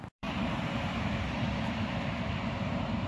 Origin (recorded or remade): remade